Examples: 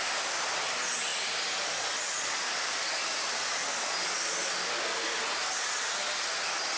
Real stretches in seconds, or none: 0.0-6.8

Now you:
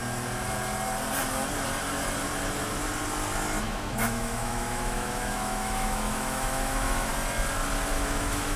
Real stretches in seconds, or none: 0.0-3.6; 7.1-7.9

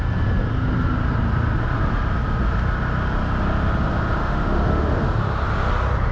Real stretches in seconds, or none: 0.0-4.2; 5.0-6.1

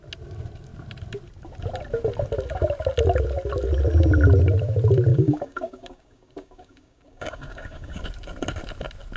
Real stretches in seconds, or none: 0.0-5.1; 8.0-9.2